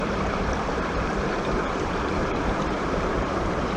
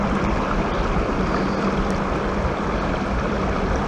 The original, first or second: second